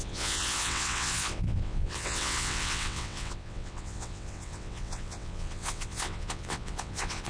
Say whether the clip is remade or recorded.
remade